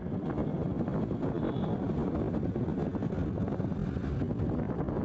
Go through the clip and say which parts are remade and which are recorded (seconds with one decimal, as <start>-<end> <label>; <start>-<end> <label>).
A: 0.0-5.0 recorded